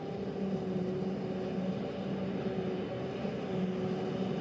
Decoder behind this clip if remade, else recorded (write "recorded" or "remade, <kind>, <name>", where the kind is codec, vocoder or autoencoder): recorded